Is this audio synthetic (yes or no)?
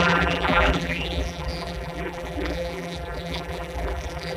yes